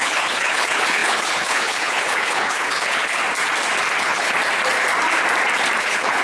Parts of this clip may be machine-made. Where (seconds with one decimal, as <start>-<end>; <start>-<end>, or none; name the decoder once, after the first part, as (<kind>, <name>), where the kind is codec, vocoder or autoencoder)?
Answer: 0.0-3.2 (codec, HILCodec); 4.0-4.4; 5.8-6.2